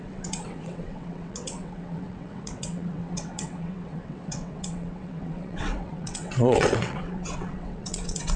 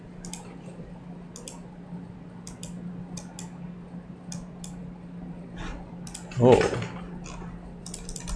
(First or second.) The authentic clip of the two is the second